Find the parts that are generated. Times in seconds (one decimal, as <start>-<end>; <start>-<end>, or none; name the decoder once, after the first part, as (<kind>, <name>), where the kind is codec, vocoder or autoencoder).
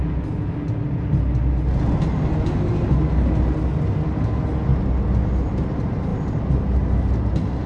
none